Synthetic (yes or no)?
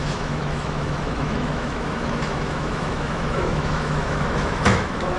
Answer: yes